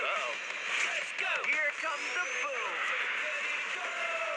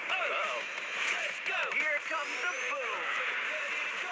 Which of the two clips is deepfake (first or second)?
second